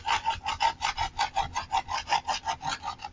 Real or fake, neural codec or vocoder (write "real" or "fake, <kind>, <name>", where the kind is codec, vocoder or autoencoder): real